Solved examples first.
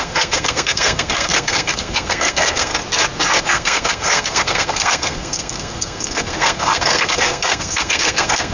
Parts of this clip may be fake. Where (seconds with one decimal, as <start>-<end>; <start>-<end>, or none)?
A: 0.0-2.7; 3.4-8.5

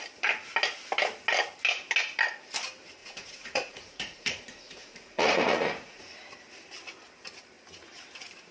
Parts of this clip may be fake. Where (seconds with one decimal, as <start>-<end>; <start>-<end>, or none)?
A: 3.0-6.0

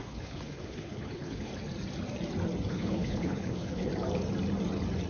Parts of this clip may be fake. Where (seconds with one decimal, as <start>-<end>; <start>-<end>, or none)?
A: 0.0-1.5; 2.7-3.9

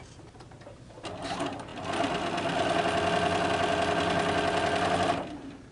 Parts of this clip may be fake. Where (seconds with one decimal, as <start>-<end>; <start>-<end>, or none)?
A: none

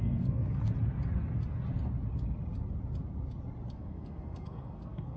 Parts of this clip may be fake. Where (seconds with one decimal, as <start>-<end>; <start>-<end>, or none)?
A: 0.0-0.6; 3.7-5.2

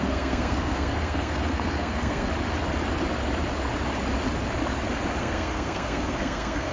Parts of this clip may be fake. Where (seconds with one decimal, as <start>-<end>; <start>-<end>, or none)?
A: 0.0-2.3; 5.2-6.7

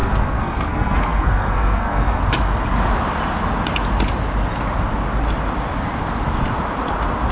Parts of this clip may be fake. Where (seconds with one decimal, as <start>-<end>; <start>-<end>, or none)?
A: 0.0-2.2

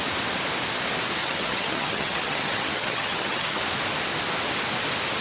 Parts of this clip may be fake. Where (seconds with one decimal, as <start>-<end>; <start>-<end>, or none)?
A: 1.2-3.6